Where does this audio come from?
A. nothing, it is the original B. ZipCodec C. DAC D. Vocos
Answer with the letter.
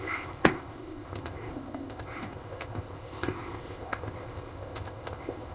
B